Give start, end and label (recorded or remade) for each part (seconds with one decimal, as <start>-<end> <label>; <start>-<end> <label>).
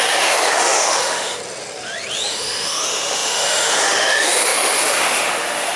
0.0-1.4 remade; 1.4-2.3 recorded; 2.3-5.8 remade